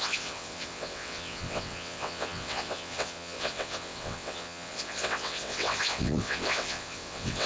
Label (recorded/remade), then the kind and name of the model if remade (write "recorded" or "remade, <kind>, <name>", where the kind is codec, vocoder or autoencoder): remade, vocoder, WaveNeXt